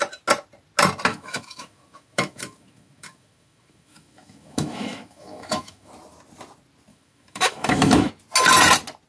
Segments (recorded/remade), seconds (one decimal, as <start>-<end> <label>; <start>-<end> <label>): 0.0-1.1 recorded; 1.1-5.9 remade; 5.9-6.9 recorded; 6.9-8.1 remade; 8.1-9.1 recorded